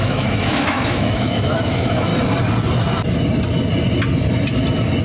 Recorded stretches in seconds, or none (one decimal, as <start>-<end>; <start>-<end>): 2.1-5.0